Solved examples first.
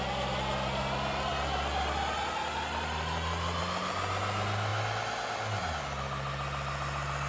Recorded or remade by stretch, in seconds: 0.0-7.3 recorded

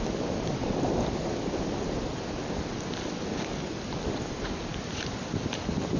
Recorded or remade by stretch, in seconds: 0.0-6.0 recorded

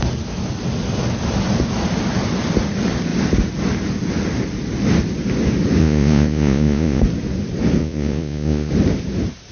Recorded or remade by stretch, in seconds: 0.0-5.8 recorded; 5.8-7.0 remade; 7.0-7.8 recorded; 7.8-8.7 remade; 8.7-9.5 recorded